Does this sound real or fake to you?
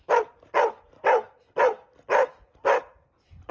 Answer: real